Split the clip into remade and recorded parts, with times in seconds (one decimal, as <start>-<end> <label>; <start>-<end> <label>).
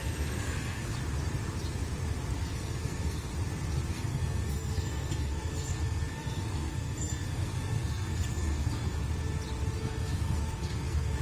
0.0-0.9 remade; 0.9-2.4 recorded; 2.4-3.3 remade; 3.3-3.9 recorded; 3.9-9.0 remade; 9.0-9.8 recorded; 9.8-11.2 remade